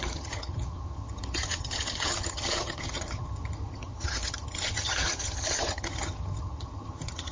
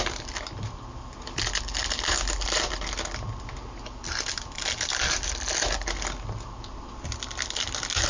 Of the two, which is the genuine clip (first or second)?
second